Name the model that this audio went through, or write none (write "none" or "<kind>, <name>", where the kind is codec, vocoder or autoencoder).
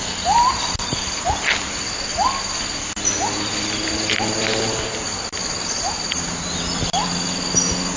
none